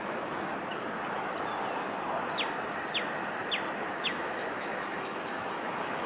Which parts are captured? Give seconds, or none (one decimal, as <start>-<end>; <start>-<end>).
0.5-3.9